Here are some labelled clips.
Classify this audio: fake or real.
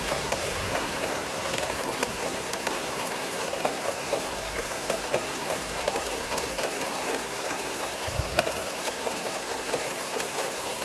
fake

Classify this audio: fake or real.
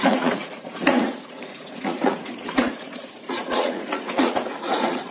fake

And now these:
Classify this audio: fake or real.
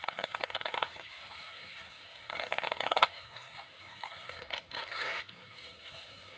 fake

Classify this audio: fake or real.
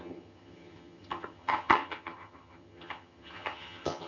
fake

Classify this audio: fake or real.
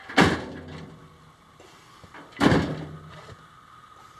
real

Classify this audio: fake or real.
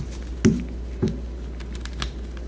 real